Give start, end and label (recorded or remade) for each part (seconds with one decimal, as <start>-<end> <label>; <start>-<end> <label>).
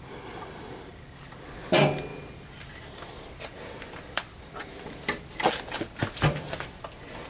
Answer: 0.0-2.1 recorded; 2.1-5.6 remade; 5.6-7.3 recorded